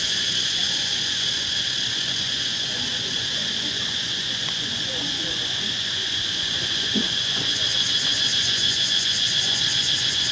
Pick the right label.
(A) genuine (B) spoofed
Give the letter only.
B